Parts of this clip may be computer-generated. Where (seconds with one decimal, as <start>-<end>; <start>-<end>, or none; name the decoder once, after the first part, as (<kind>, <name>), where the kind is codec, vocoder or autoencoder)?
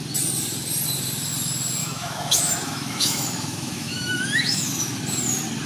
1.8-5.0 (autoencoder, DAC-VAE)